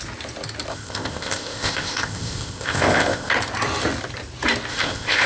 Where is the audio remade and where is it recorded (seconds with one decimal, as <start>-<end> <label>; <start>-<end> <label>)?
0.0-0.7 recorded; 0.7-3.3 remade; 3.3-4.7 recorded; 4.7-5.3 remade